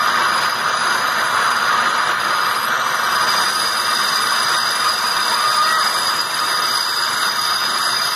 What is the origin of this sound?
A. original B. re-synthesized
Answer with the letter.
A